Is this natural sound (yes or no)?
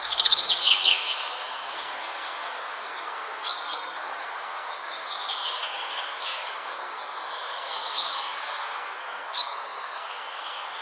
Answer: no